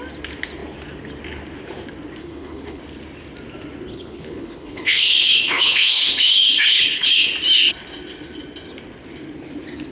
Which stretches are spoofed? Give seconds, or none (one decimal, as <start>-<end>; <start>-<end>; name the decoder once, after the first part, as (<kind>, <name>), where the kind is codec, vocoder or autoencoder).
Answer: 2.2-2.8 (codec, HILCodec); 3.9-7.3